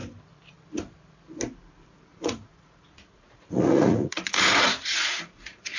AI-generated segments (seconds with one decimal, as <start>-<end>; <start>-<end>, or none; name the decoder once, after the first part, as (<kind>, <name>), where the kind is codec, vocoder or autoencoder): 2.1-5.8 (vocoder, Vocos)